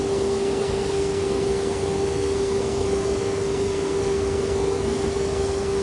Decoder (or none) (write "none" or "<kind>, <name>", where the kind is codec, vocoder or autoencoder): codec, SNAC